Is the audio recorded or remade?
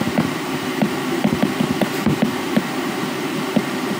remade